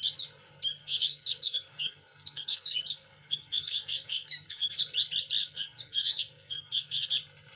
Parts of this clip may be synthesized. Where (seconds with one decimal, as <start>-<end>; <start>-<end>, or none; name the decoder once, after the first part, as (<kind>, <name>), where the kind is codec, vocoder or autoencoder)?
0.8-4.8 (codec, SNAC); 5.4-7.1